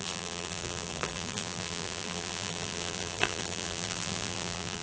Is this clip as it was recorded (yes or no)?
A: no